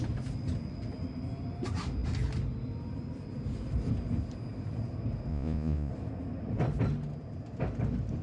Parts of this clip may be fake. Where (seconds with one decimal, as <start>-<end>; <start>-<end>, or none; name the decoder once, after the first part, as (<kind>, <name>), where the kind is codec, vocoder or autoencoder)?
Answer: 5.3-5.9 (vocoder, Vocos)